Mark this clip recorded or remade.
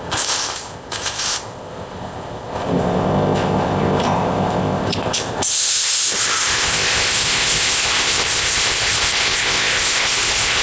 remade